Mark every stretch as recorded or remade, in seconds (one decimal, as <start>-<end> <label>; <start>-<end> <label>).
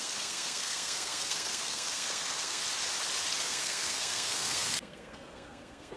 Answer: 0.0-2.6 remade; 2.6-3.4 recorded; 3.4-6.0 remade